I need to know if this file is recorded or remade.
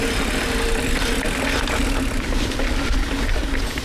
recorded